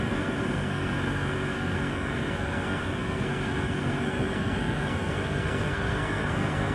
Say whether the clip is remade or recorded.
remade